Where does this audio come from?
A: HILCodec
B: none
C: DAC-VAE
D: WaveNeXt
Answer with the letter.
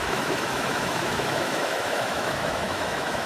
C